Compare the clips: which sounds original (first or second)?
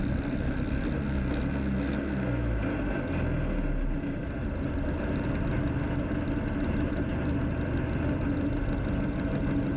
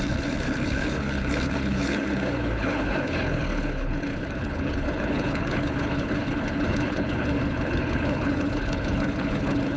first